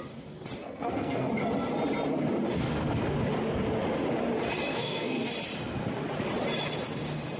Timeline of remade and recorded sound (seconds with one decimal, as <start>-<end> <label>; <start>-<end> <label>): 0.0-0.6 recorded; 0.6-1.3 remade; 1.3-4.7 recorded; 4.7-5.3 remade; 5.3-7.4 recorded